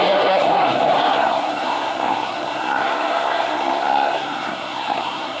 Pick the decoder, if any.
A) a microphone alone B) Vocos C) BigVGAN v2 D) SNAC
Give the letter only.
D